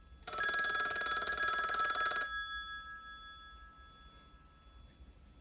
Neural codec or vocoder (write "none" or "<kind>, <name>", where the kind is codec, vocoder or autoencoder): none